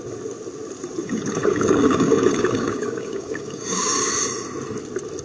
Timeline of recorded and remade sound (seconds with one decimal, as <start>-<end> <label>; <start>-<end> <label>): 0.0-1.0 recorded; 1.0-4.1 remade; 4.1-5.2 recorded